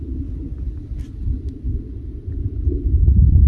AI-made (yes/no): no